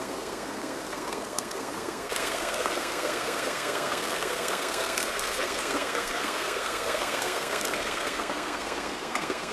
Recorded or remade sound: remade